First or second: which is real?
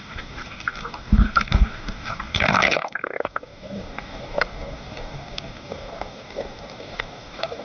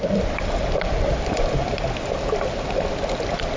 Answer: second